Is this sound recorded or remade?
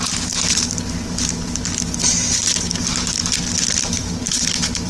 remade